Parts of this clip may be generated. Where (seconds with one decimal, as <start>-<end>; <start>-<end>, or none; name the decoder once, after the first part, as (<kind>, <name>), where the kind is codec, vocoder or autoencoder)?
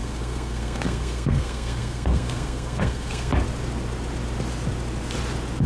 0.0-3.3 (codec, SNAC)